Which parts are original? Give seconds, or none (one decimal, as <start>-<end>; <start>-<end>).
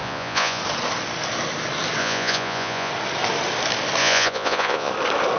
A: 0.6-2.0; 2.9-4.0; 4.9-5.4